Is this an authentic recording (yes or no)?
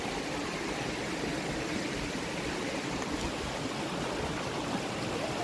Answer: yes